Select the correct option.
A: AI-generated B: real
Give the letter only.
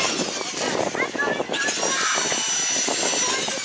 B